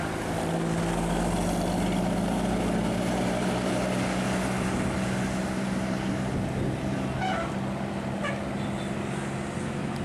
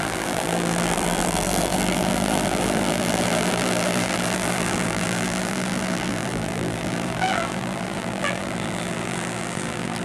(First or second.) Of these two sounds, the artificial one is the second